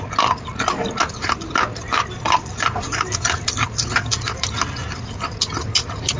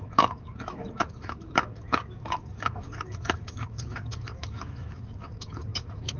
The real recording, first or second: first